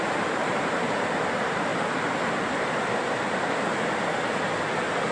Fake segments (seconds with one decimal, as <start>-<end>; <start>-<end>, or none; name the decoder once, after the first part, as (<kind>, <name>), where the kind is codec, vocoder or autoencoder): 0.4-1.1 (vocoder, BigVGAN v2)